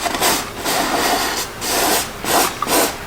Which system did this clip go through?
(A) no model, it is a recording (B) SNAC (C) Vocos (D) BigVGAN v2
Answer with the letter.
A